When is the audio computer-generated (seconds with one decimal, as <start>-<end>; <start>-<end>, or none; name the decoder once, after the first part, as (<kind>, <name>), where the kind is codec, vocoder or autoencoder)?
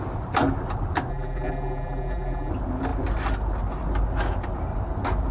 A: 1.1-2.5 (vocoder, BigVGAN v2)